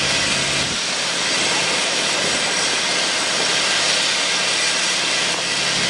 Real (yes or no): yes